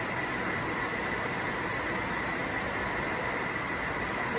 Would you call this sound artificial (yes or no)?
no